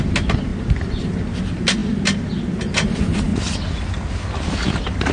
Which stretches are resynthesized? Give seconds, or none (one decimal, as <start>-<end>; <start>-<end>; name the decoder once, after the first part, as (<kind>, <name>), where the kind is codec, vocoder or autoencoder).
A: none